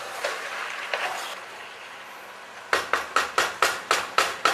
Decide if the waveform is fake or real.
real